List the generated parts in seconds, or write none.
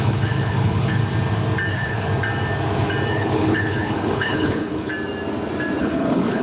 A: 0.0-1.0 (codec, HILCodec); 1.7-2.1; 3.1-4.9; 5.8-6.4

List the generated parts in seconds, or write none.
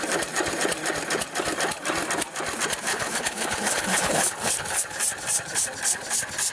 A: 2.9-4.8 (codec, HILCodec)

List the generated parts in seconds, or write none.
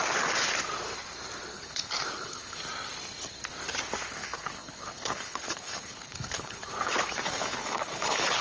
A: 1.5-2.6 (codec, HILCodec); 4.2-8.4